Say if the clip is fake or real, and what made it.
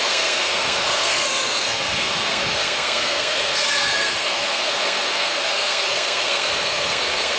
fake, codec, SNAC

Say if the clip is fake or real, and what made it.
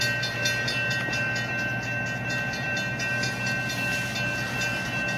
real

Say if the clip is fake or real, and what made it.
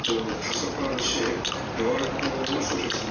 real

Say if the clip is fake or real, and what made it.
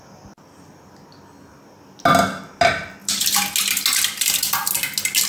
real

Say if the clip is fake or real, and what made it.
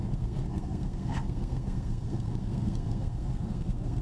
fake, codec, SNAC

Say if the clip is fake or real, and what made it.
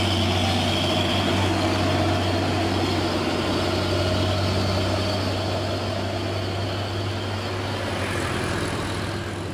real